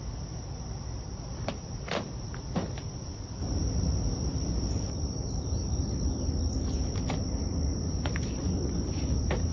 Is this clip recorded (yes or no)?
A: yes